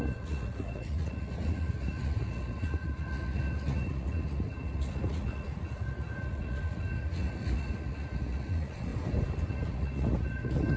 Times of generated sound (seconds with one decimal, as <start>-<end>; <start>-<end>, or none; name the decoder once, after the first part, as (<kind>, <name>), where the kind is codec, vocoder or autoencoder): 0.0-8.9 (vocoder, Vocos); 9.5-10.8